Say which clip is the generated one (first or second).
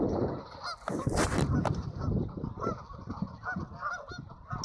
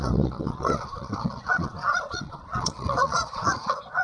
second